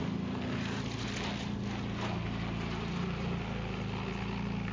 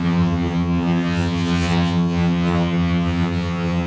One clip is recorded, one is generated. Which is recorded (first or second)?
first